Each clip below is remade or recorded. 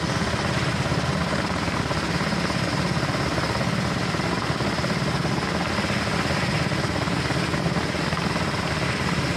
recorded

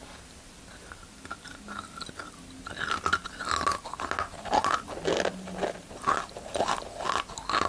recorded